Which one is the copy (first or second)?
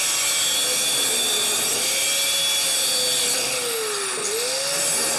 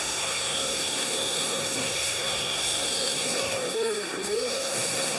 second